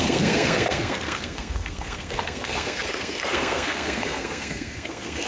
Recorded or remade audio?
remade